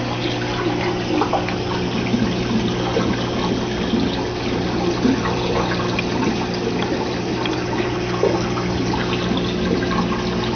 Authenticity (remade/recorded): recorded